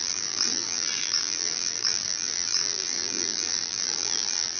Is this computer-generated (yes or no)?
yes